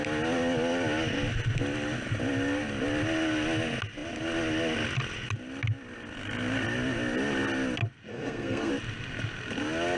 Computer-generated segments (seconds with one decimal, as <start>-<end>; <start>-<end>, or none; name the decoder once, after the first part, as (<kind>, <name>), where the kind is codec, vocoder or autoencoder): 8.1-8.7 (codec, SNAC)